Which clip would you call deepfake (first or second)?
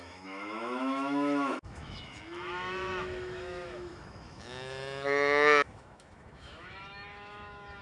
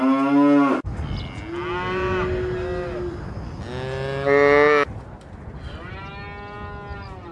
first